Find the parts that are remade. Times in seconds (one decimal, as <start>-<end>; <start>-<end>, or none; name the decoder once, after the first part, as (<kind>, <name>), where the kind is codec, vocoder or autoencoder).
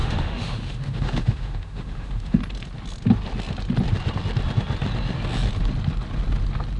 0.0-2.4 (autoencoder, DAC-VAE)